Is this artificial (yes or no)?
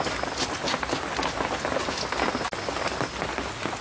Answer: no